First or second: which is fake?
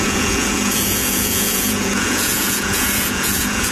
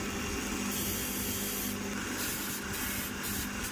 first